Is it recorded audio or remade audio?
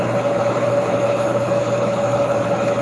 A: remade